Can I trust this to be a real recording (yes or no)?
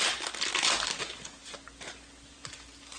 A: yes